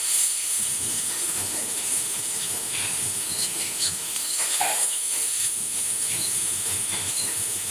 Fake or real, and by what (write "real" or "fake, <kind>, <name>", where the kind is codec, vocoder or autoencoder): fake, autoencoder, DAC-VAE